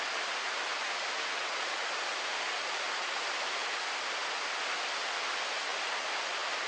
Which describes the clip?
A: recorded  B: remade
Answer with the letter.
A